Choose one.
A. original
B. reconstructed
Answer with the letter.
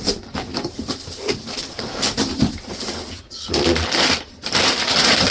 B